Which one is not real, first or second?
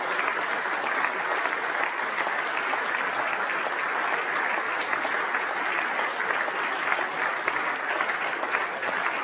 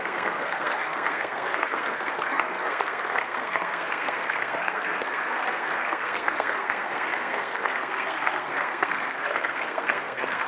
second